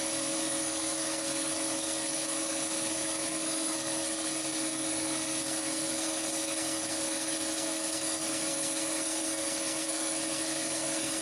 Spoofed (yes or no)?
yes